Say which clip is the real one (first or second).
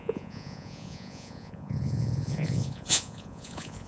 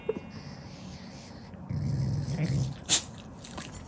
second